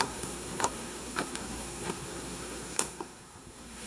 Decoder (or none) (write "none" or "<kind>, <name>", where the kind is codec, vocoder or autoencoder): codec, SNAC